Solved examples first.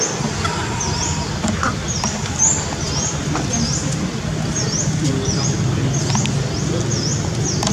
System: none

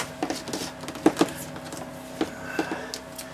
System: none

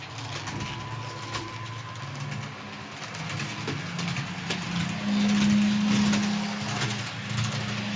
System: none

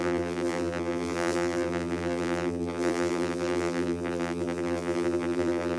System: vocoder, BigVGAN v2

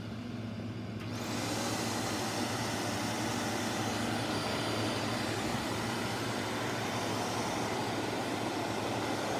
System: none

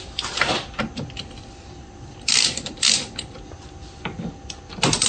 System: vocoder, BigVGAN v2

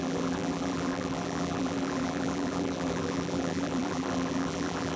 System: vocoder, BigVGAN v2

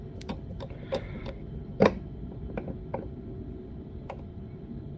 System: vocoder, BigVGAN v2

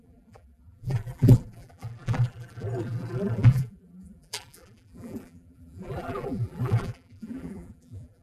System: vocoder, BigVGAN v2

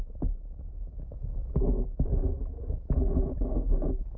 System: none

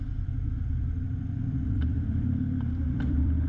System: vocoder, BigVGAN v2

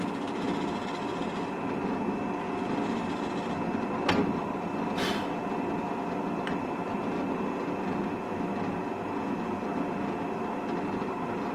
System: none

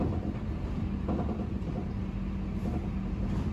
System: none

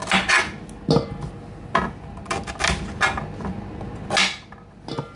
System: none